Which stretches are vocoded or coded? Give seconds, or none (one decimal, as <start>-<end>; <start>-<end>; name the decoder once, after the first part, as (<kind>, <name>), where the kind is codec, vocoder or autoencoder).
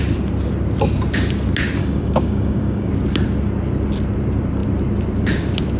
1.8-2.9 (codec, DAC)